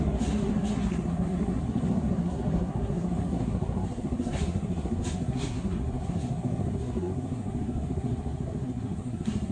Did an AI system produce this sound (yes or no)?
yes